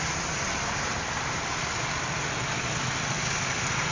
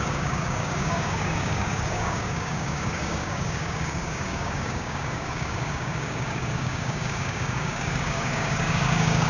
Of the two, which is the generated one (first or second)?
second